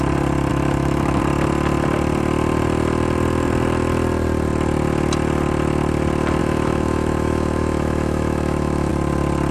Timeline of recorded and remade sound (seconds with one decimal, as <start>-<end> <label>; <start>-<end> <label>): 0.0-0.5 recorded; 0.5-1.2 remade; 1.2-6.4 recorded; 6.4-8.9 remade; 8.9-9.5 recorded